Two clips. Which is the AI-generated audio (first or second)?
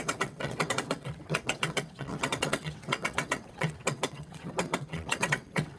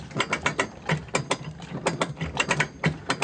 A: first